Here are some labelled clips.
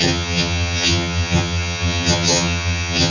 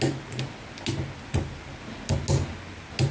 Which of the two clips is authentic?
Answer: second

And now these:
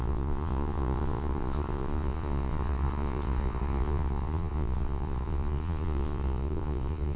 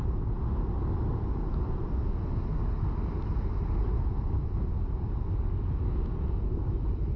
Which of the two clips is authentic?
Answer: second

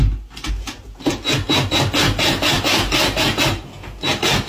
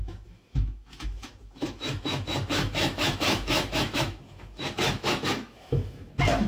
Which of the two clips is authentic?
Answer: first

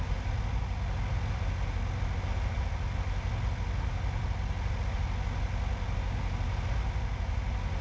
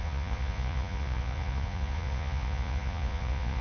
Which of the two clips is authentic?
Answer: first